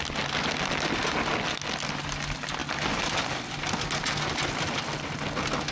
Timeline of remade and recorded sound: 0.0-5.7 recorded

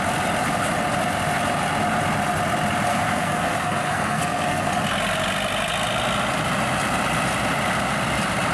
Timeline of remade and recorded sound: 0.0-2.9 recorded; 2.9-4.7 remade; 4.7-8.5 recorded

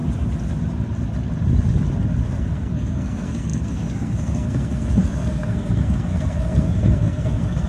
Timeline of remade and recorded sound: 0.0-2.4 recorded; 2.4-7.7 remade

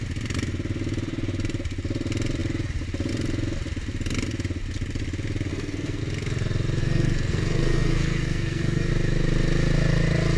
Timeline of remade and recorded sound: 0.0-5.5 recorded; 5.5-6.0 remade; 6.0-6.8 recorded; 6.8-8.9 remade; 8.9-10.4 recorded